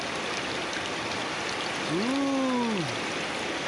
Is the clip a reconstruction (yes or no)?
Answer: no